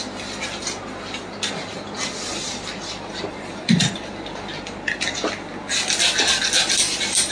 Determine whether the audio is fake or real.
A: real